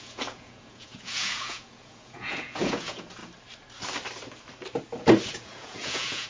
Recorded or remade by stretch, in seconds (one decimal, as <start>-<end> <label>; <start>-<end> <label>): 0.0-3.2 remade; 3.2-5.3 recorded; 5.3-6.3 remade